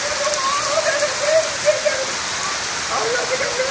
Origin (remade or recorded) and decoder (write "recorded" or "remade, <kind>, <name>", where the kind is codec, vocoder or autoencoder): recorded